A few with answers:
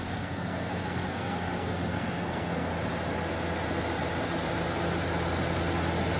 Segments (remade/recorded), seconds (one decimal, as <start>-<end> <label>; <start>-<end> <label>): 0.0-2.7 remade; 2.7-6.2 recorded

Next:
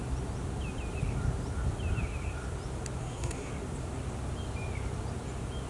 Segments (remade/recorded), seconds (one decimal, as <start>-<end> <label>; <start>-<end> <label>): 0.0-3.0 recorded; 3.0-3.5 remade; 3.5-5.7 recorded

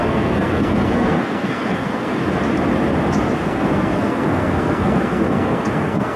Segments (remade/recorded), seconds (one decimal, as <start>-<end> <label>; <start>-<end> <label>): 0.0-2.2 remade; 2.2-3.4 recorded; 3.4-6.2 remade